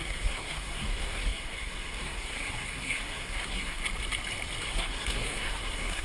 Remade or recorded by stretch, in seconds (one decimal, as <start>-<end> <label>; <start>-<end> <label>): 0.0-3.8 remade; 3.8-4.6 recorded; 4.6-6.0 remade